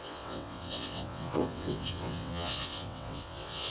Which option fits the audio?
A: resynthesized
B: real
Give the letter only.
A